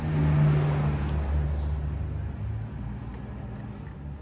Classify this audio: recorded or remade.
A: recorded